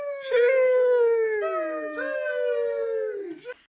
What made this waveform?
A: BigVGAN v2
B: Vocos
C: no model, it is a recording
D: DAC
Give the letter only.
C